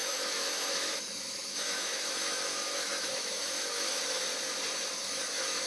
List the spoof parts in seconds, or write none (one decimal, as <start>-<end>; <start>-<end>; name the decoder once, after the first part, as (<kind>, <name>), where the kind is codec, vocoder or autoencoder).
0.0-4.2 (autoencoder, DAC-VAE); 5.0-5.7